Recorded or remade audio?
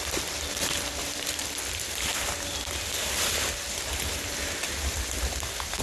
remade